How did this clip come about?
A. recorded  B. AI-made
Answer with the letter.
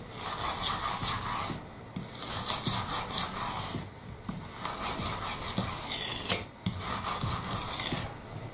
A